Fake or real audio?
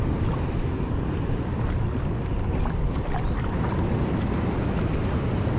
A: real